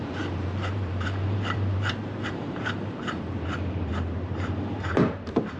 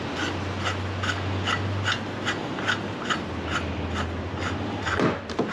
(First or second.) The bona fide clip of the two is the second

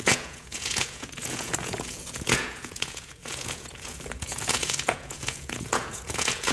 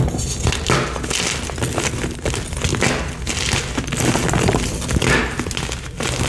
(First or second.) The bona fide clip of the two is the second